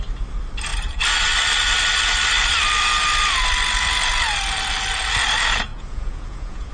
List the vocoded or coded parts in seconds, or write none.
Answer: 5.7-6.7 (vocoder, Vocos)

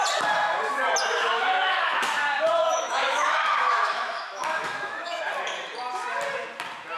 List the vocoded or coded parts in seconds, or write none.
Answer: 1.1-2.2 (autoencoder, DAC-VAE); 2.6-5.2

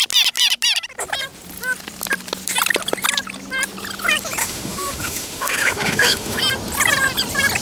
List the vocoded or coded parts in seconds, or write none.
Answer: 4.4-6.4 (autoencoder, DAC-VAE)

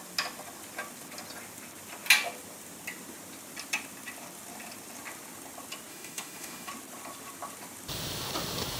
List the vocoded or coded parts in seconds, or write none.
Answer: 5.9-6.7 (autoencoder, DAC-VAE)

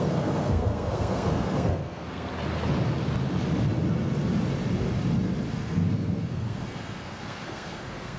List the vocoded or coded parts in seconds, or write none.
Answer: 0.0-2.3 (codec, SNAC); 5.5-8.2

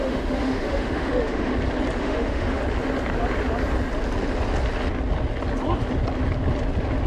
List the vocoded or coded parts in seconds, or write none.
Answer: 0.0-1.5 (autoencoder, DAC-VAE); 2.0-2.6

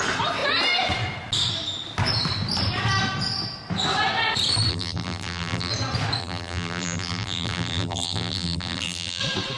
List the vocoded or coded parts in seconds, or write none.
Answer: 4.7-5.7 (vocoder, BigVGAN v2); 6.2-9.2

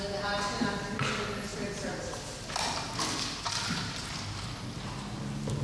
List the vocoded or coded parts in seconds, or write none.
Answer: none